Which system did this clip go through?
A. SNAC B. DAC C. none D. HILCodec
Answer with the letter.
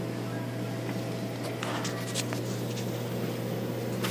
C